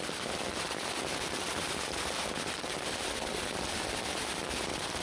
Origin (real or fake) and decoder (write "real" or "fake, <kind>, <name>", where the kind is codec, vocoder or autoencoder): real